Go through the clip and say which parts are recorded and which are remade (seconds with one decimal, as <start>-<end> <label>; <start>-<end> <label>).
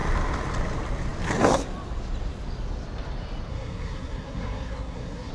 0.0-3.5 recorded; 3.5-5.3 remade